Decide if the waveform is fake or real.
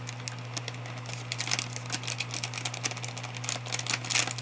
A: real